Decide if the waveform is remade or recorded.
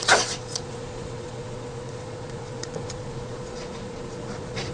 remade